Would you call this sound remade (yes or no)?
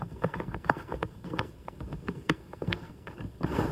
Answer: yes